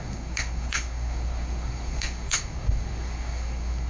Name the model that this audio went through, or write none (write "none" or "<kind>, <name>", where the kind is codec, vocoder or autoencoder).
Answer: codec, SNAC